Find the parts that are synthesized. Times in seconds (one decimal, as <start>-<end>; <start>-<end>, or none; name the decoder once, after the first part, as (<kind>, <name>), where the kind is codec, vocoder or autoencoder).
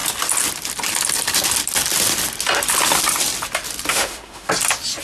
3.9-4.5 (autoencoder, DAC-VAE)